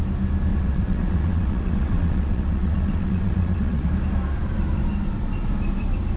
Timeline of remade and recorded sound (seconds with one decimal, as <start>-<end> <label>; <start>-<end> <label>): 0.0-0.5 recorded; 0.5-3.9 remade; 3.9-6.2 recorded